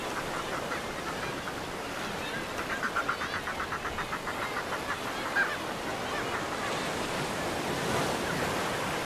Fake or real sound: real